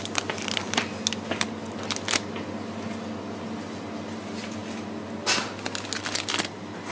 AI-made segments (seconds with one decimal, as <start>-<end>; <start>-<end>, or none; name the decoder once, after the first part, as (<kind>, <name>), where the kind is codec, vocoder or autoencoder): none